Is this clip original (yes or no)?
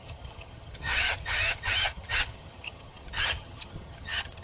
no